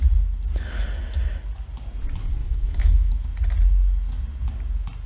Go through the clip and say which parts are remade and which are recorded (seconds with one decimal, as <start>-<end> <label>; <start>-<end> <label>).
0.0-2.4 recorded; 2.4-3.1 remade; 3.1-5.1 recorded